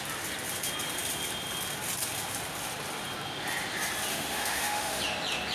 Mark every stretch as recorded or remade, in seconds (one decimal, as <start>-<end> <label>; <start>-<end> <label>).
0.0-4.1 recorded; 4.1-5.0 remade; 5.0-5.5 recorded